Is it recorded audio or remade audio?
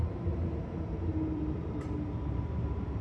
remade